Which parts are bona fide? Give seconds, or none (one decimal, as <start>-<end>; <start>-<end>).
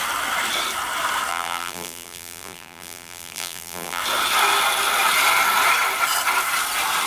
0.0-1.3; 4.0-7.1